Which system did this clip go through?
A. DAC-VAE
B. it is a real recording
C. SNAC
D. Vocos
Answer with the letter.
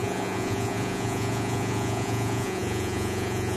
D